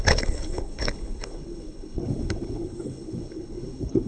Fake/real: fake